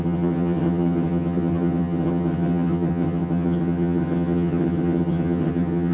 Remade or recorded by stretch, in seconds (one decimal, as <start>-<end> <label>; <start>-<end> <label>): 0.0-5.9 remade